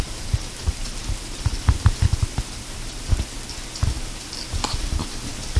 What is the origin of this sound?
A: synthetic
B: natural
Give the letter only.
B